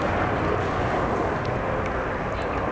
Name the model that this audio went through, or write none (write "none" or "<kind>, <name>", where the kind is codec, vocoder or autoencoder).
none